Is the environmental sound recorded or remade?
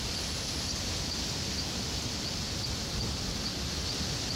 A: recorded